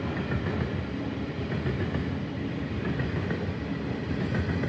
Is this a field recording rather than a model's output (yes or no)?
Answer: yes